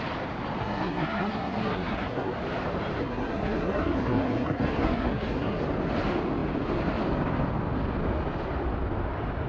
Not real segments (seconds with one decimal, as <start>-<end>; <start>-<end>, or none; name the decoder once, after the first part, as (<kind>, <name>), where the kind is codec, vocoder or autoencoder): 0.6-2.3 (codec, SNAC); 3.0-5.6